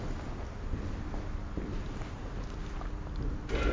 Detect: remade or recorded recorded